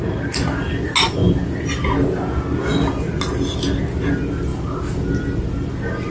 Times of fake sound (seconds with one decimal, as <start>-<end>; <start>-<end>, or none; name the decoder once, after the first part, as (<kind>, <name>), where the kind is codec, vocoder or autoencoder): 4.5-6.1 (vocoder, BigVGAN v2)